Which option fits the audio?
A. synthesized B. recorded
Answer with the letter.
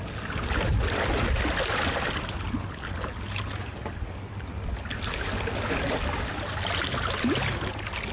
B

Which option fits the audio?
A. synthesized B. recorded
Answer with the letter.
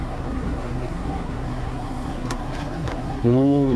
A